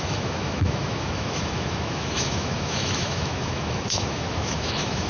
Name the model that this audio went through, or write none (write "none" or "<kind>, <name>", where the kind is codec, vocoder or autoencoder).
autoencoder, DAC-VAE